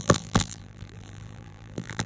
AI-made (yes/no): yes